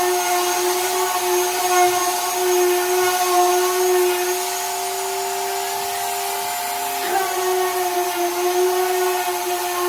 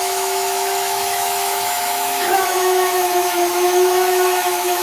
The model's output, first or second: second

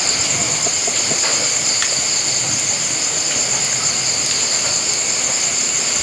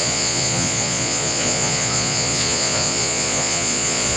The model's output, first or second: second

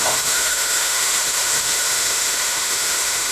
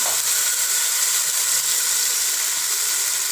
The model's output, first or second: first